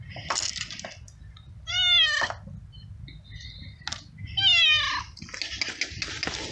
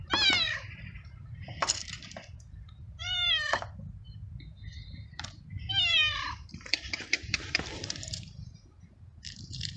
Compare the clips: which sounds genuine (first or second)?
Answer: first